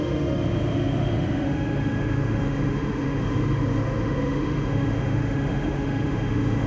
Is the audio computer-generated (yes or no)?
yes